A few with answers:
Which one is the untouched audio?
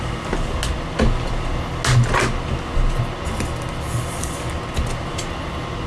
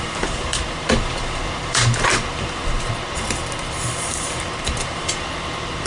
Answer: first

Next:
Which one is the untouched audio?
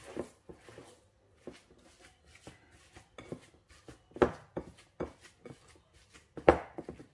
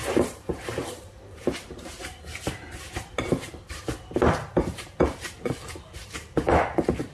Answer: first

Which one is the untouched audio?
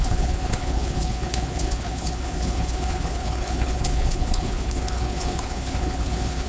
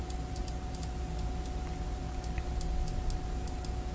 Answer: second